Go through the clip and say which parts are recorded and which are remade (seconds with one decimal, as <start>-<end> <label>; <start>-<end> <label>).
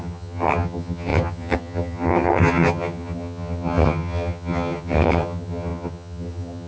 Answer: 0.0-6.7 remade